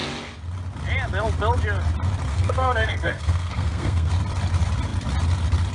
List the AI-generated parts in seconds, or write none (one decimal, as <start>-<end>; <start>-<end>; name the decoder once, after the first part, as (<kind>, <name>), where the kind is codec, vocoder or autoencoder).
2.3-4.1 (codec, SNAC)